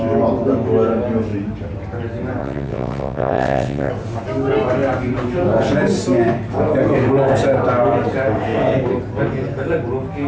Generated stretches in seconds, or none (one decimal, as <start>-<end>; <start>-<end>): 2.4-3.9